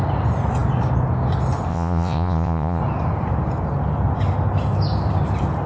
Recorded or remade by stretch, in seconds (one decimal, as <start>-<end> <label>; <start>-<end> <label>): 0.0-1.7 recorded; 1.7-2.8 remade; 2.8-5.7 recorded